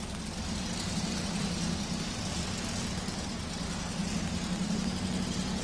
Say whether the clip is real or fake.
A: real